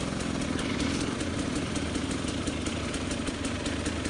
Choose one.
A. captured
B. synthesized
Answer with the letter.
A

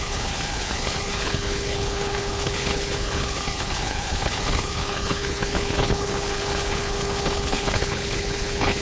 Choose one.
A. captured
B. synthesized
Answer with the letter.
B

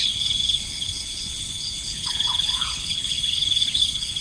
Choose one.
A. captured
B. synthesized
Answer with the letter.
B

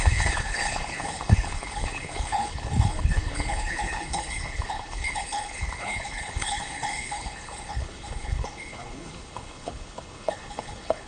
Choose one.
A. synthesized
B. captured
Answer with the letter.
A